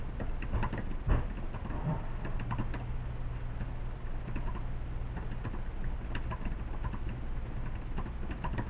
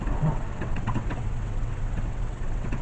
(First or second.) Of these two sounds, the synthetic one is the second